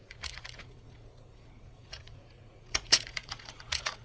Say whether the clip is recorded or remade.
remade